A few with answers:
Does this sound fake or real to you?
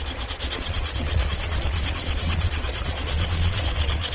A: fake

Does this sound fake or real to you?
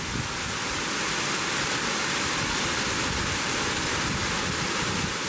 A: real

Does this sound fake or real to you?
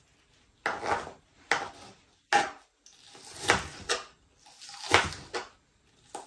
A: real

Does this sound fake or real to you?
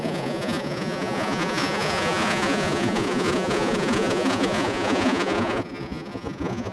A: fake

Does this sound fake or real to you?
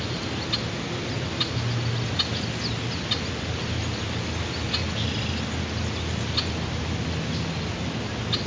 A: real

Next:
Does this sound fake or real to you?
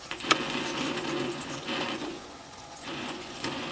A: fake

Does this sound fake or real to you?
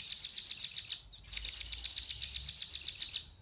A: real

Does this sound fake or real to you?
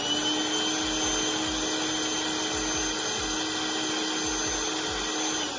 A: real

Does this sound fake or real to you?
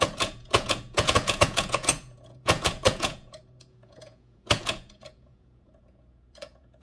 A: fake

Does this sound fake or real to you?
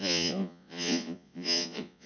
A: fake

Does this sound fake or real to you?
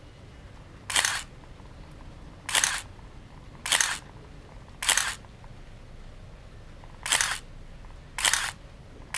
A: real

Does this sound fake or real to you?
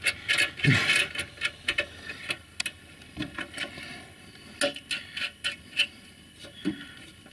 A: real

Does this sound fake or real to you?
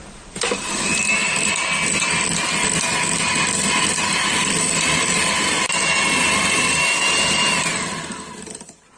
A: real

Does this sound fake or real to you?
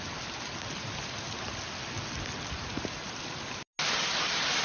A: real